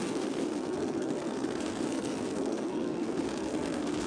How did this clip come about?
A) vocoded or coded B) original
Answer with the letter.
A